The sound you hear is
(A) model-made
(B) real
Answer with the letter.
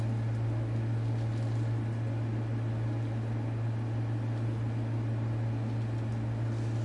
B